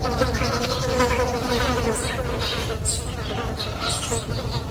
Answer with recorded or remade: recorded